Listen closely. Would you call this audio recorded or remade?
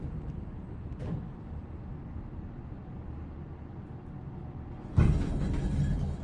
recorded